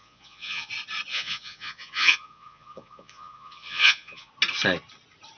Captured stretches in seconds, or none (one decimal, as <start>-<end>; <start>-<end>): 0.7-1.1; 4.3-5.4